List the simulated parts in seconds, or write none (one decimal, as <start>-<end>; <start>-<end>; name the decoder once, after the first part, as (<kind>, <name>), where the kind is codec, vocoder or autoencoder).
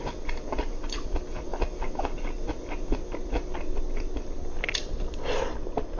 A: none